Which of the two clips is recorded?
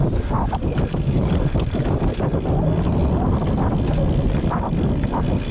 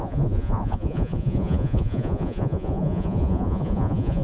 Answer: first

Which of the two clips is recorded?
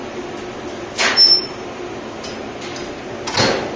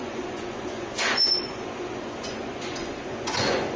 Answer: first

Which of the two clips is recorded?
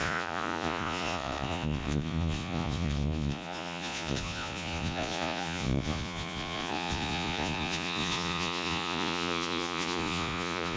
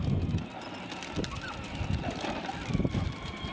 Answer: second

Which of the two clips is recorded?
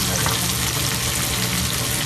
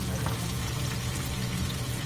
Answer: first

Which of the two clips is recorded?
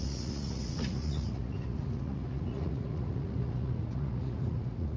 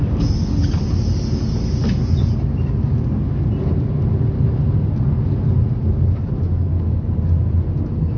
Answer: second